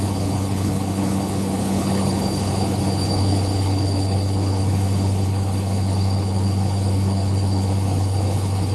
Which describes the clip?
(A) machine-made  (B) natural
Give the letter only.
A